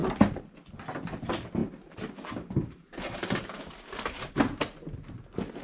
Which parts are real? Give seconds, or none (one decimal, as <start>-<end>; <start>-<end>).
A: 0.0-1.6; 4.3-5.6